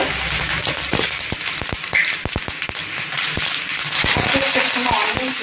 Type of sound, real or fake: real